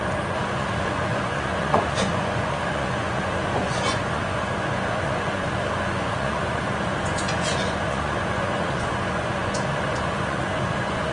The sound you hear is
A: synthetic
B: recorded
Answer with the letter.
A